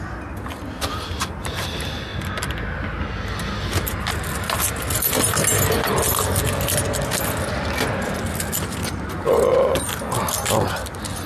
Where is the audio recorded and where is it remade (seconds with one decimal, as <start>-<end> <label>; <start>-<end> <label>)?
0.0-11.3 recorded